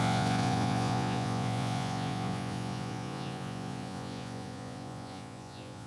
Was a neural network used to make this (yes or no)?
yes